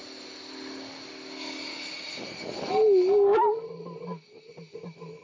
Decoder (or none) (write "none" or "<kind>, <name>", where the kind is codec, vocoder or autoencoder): none